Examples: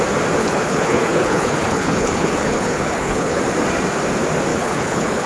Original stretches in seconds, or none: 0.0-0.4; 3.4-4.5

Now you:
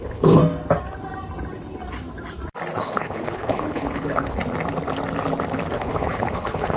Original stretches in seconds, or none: 0.4-2.7; 4.4-5.7

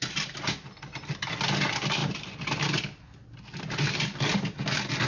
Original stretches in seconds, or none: 0.0-5.1

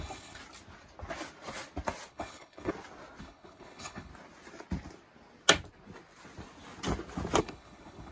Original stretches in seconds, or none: 0.4-2.1; 2.7-3.2; 4.1-7.4